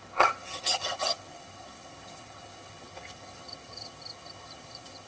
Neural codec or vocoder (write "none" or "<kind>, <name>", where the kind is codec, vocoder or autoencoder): vocoder, HiFi-GAN